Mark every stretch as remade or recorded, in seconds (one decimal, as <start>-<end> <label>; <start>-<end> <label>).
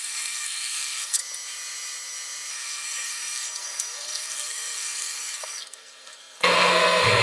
0.0-1.2 remade; 1.2-2.5 recorded; 2.5-7.2 remade